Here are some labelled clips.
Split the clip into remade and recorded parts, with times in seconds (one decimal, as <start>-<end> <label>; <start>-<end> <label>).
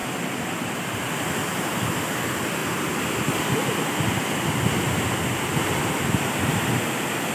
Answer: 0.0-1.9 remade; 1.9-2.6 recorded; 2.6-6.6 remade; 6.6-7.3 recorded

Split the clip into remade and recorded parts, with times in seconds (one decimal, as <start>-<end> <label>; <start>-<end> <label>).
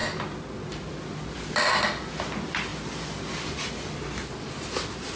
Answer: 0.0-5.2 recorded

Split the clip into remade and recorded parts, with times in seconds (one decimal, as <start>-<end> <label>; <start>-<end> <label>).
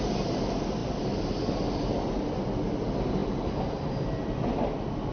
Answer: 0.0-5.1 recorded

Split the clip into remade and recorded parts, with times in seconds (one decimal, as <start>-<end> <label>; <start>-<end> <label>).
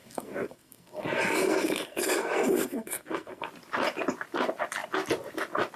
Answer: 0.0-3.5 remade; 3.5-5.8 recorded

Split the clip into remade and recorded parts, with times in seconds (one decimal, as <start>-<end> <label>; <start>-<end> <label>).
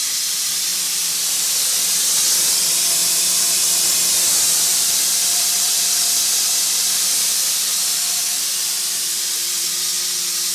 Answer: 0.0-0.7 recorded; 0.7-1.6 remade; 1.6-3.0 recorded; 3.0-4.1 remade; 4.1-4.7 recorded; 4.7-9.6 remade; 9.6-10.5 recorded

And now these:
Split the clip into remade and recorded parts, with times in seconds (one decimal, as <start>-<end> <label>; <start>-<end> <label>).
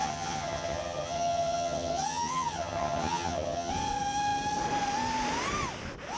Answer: 0.0-3.7 remade; 3.7-6.2 recorded